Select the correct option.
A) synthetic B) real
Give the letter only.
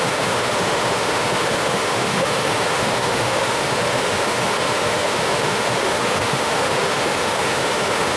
A